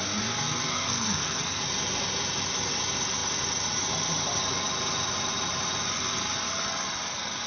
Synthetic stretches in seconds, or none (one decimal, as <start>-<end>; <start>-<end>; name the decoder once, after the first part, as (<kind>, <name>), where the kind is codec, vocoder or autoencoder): 0.7-1.6 (codec, SNAC)